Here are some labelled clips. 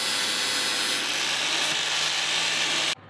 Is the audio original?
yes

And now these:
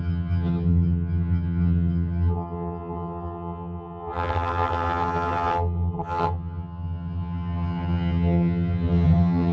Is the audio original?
no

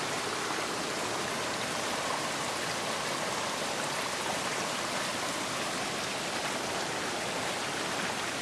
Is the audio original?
yes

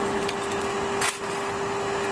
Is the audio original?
yes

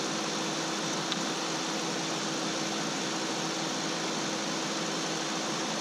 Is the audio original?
yes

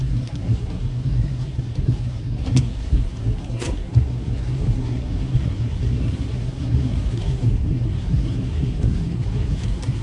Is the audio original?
no